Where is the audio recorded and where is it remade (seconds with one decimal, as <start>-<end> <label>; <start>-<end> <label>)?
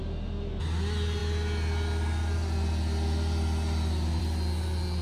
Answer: 0.0-5.0 recorded